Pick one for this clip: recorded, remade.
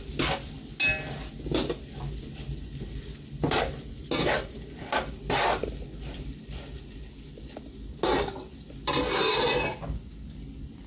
recorded